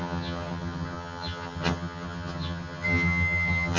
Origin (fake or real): fake